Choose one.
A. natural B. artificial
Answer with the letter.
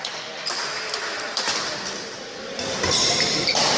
A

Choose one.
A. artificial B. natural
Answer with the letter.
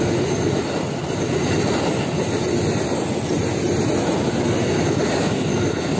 B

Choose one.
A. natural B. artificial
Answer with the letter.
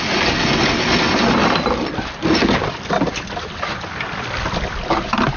A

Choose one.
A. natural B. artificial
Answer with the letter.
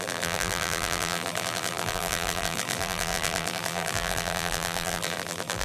B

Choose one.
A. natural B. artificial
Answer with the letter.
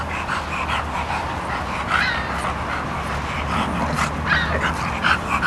A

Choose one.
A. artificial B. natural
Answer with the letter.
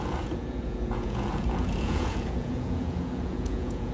A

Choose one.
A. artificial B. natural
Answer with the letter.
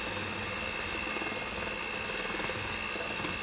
B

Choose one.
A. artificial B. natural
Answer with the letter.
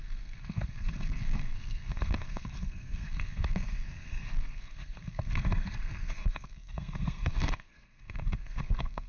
A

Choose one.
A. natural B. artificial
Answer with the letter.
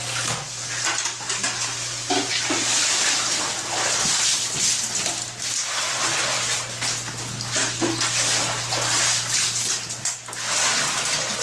A